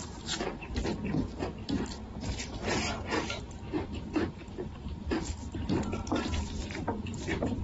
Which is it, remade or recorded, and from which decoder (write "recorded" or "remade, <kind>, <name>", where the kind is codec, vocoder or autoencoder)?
remade, vocoder, BigVGAN v2